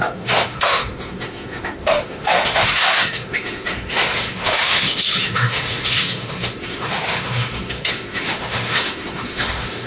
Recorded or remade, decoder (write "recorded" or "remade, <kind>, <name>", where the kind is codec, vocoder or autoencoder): remade, autoencoder, DAC-VAE